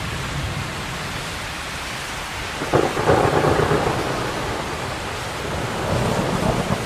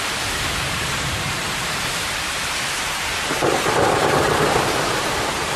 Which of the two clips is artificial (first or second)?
second